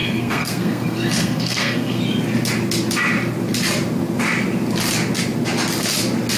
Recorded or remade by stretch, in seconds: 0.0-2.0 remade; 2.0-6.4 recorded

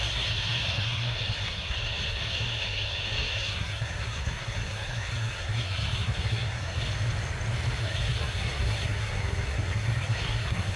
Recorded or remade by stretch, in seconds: 0.0-6.8 remade; 6.8-7.8 recorded; 7.8-10.8 remade

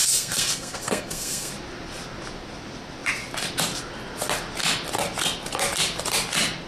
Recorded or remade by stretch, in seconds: 0.0-1.5 remade; 1.5-6.7 recorded